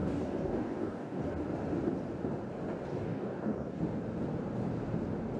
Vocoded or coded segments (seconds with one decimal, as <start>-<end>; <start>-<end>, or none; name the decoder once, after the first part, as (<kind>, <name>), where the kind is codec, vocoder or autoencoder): 0.0-1.2 (codec, DAC); 2.9-3.8